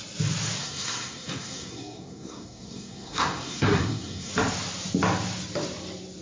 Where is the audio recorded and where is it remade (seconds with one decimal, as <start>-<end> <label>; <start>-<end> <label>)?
0.0-0.6 recorded; 0.6-4.3 remade; 4.3-6.2 recorded